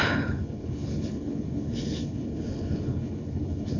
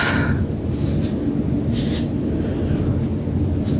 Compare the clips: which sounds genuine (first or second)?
second